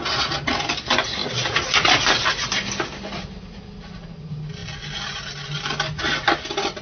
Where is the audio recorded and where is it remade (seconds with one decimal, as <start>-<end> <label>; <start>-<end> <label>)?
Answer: 0.0-6.8 recorded